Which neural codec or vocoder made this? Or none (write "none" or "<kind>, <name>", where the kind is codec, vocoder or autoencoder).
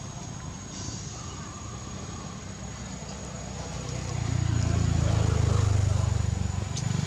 none